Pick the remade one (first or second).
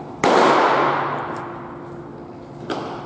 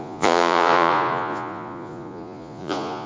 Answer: second